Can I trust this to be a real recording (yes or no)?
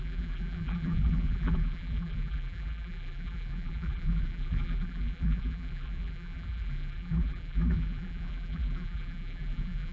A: no